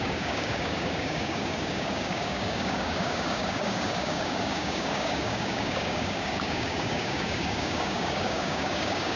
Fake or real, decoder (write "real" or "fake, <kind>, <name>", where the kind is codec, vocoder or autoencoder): fake, codec, DAC